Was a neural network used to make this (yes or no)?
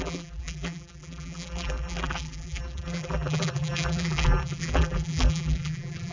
yes